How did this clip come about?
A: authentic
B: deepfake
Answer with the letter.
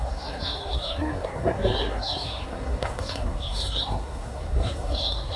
B